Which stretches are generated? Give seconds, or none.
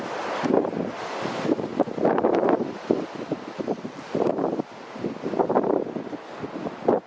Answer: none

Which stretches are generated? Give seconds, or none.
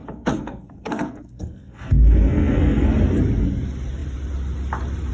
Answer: 0.0-2.9 (codec, SNAC)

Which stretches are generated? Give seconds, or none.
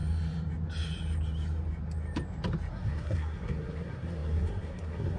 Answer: 2.7-5.2 (codec, SNAC)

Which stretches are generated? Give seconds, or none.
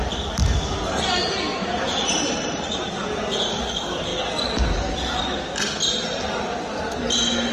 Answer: 1.5-2.6 (vocoder, BigVGAN v2)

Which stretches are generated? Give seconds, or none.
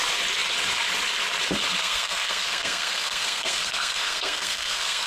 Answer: 1.8-5.1 (codec, SNAC)